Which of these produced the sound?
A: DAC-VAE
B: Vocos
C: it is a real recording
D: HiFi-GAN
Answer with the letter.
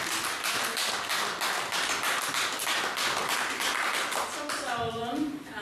C